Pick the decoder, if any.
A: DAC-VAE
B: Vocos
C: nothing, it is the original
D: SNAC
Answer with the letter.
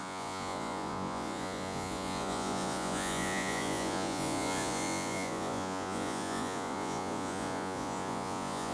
B